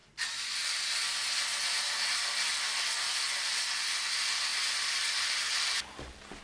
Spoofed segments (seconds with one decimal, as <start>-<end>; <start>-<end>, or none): none